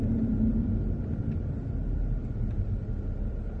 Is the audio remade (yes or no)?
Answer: no